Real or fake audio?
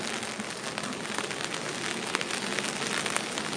real